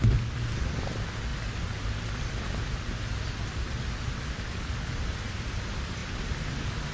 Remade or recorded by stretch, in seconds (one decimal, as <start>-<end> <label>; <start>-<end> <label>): 0.0-1.3 recorded; 1.3-3.3 remade; 3.3-6.9 recorded